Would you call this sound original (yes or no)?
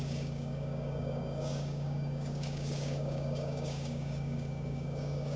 no